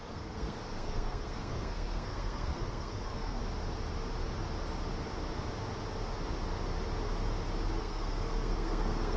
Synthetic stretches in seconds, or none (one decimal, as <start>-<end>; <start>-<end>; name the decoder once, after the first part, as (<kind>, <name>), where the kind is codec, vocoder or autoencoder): 0.0-3.4 (codec, SNAC); 7.8-9.2